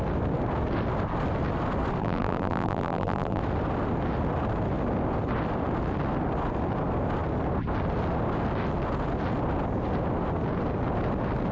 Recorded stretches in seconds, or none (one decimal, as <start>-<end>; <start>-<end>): 0.0-2.0; 3.4-11.5